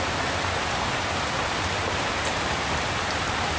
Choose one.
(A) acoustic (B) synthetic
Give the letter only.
A